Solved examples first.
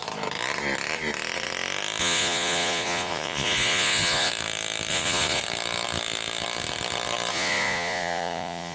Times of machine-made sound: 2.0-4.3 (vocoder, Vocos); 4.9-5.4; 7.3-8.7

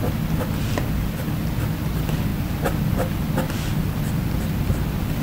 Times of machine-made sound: none